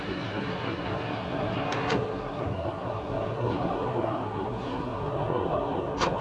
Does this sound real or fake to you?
fake